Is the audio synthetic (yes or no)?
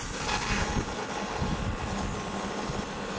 no